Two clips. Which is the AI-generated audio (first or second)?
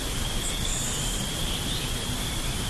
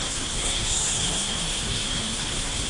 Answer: second